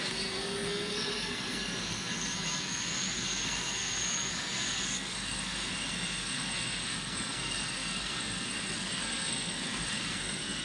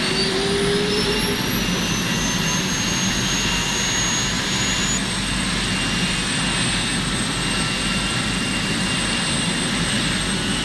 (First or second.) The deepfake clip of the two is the first